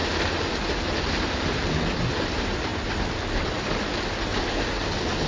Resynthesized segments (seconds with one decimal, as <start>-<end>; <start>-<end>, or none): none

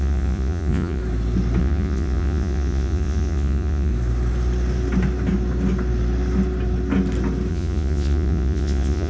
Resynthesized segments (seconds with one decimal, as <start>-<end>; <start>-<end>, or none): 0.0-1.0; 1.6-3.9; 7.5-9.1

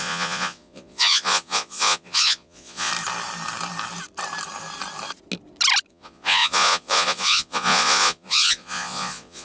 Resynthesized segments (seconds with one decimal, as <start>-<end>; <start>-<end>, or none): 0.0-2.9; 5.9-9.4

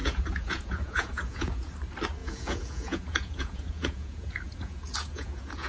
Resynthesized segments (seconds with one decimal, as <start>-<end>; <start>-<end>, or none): 0.0-1.7; 2.2-5.7

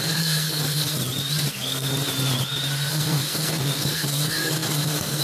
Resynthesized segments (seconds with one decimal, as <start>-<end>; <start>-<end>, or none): 0.0-1.0; 1.5-1.9; 2.9-5.2

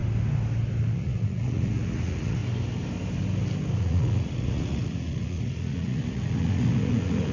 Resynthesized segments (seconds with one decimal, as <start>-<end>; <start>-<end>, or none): 0.8-2.4; 3.8-7.3

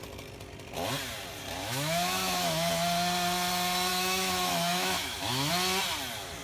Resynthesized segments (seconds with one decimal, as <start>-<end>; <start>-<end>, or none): 1.6-2.7; 3.9-5.5

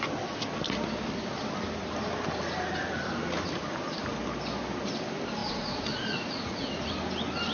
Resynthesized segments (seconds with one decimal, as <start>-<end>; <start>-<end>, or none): 5.4-6.9